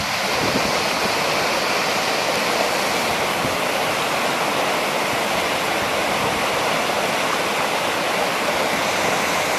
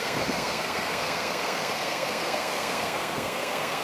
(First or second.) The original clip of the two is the first